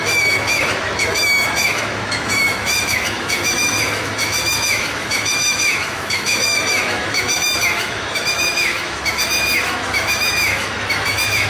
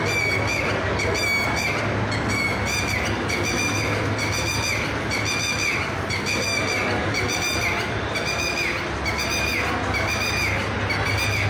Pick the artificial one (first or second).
first